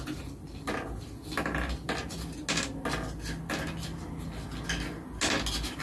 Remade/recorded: recorded